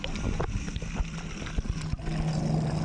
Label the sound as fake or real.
real